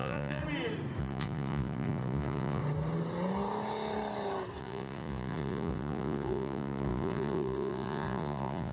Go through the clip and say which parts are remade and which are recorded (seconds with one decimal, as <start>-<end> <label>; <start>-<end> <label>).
0.0-0.4 remade; 0.4-1.0 recorded; 1.0-2.6 remade; 2.6-4.6 recorded; 4.6-8.7 remade